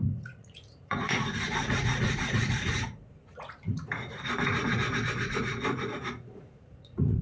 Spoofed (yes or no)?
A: yes